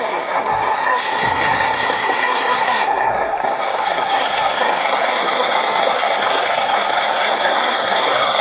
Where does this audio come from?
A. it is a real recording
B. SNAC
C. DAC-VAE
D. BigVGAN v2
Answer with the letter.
B